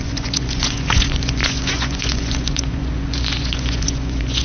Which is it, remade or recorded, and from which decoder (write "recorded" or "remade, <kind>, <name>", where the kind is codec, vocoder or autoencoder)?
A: remade, vocoder, Vocos